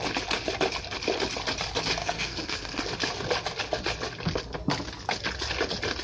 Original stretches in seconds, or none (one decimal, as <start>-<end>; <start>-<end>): 0.0-2.0; 2.8-6.0